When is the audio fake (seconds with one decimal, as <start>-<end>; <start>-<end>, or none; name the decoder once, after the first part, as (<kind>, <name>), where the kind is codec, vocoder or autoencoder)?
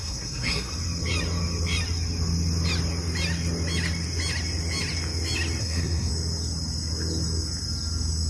0.0-0.7 (codec, SNAC); 5.6-6.1